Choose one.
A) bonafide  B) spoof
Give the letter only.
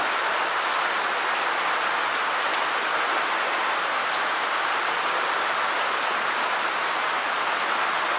A